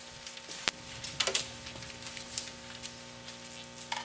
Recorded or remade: recorded